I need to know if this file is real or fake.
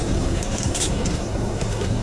fake